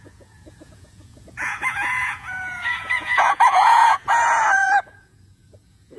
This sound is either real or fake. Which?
fake